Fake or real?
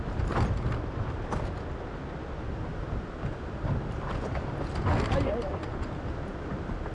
real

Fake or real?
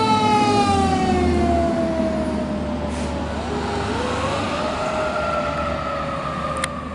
real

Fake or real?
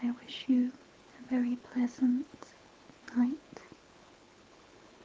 fake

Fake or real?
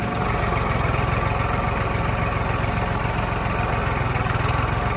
real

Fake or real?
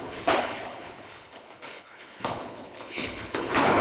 fake